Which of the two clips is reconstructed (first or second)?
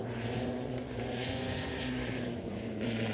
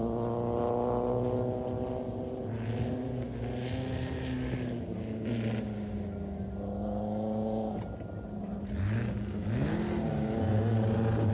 first